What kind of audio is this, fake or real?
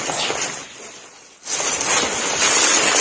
real